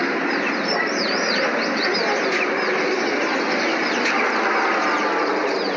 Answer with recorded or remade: recorded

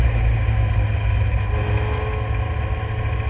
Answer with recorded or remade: recorded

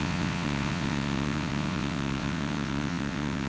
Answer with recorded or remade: remade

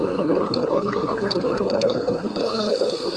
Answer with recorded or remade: remade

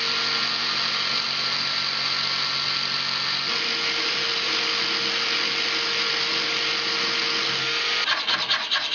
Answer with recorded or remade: recorded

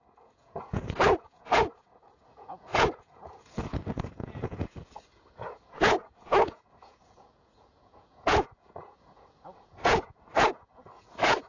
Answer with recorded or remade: remade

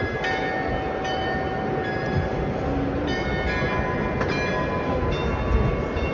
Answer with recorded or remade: recorded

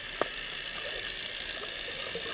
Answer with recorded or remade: recorded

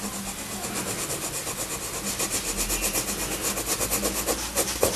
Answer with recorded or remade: recorded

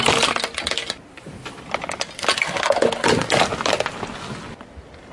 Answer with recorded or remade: recorded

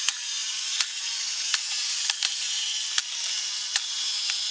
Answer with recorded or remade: recorded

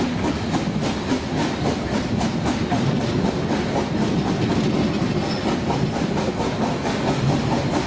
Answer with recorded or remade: recorded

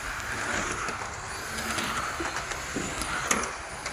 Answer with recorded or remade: recorded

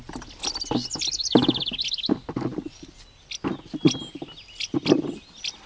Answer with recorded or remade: recorded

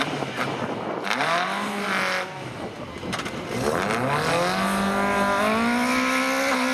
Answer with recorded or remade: recorded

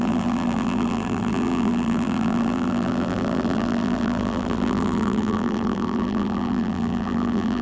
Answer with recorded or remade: remade